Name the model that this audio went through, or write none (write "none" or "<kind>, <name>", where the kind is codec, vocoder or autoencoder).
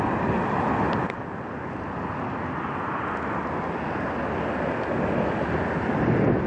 none